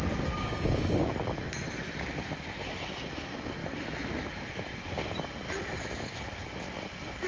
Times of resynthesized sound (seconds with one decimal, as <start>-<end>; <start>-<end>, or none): 0.0-1.1